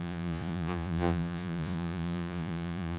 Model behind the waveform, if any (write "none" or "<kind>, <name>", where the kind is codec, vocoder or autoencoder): vocoder, Vocos